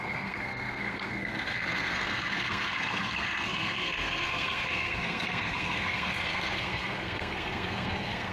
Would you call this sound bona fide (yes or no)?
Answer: no